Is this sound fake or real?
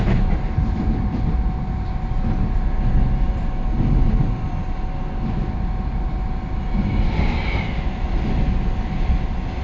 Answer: real